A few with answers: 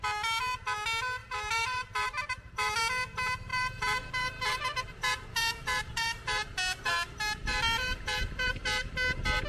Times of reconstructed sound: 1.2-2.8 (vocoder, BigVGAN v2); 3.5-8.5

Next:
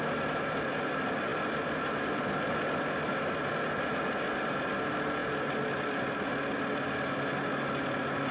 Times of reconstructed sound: none

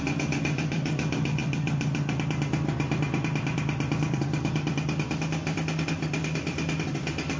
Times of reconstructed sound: 0.0-7.4 (vocoder, BigVGAN v2)